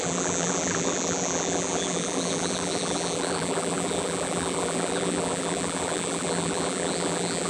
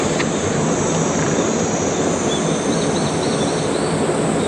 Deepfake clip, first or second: first